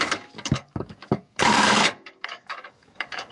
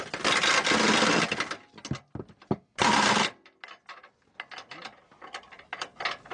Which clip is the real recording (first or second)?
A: second